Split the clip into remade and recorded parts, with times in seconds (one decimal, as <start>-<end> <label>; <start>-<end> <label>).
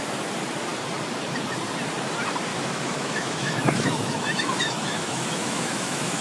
0.0-2.5 recorded; 2.5-6.2 remade